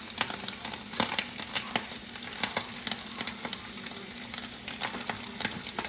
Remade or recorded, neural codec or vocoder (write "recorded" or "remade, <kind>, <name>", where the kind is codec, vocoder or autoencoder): recorded